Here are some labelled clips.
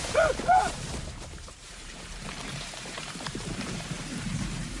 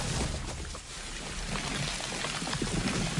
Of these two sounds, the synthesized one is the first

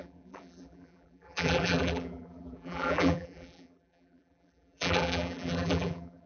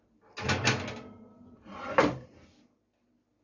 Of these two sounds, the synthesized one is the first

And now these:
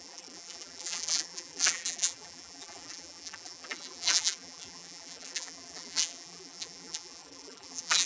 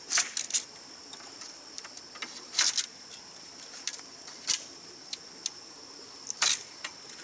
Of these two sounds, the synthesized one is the first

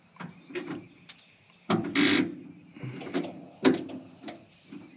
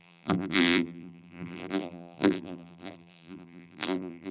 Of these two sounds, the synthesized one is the second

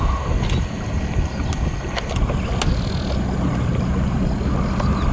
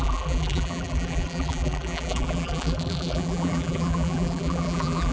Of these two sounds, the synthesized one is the second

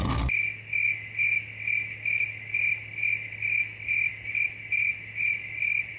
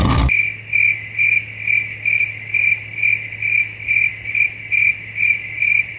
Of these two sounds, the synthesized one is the second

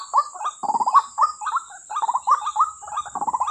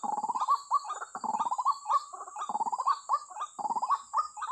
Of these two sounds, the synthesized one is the second